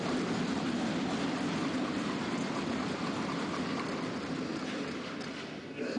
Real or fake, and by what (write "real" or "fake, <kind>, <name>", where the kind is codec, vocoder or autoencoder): real